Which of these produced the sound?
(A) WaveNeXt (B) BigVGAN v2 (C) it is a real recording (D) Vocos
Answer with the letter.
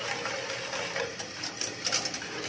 C